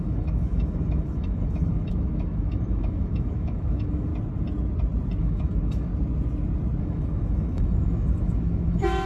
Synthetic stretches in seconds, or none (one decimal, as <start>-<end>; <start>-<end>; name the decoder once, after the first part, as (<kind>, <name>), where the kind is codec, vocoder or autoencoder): 0.0-4.1 (autoencoder, DAC-VAE); 5.2-5.9; 6.8-9.1